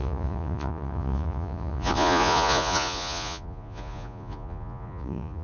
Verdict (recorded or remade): remade